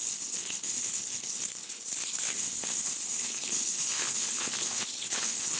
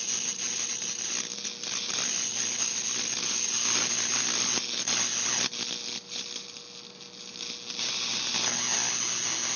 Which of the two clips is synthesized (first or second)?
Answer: first